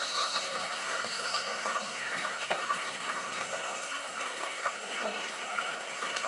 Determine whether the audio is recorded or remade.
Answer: remade